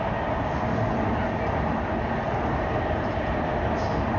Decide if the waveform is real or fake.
real